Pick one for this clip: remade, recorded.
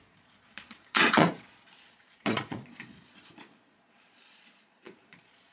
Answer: remade